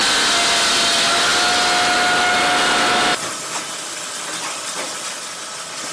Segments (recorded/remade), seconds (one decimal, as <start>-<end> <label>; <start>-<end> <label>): 0.0-5.9 recorded